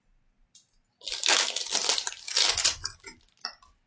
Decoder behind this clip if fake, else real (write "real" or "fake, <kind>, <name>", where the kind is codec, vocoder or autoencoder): real